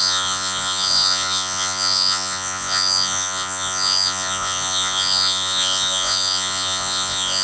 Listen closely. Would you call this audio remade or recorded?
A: remade